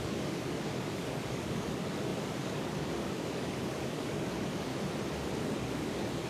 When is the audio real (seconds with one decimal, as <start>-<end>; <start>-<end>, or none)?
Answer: 4.7-5.4